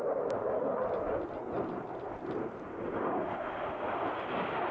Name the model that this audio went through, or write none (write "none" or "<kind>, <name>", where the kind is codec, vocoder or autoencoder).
none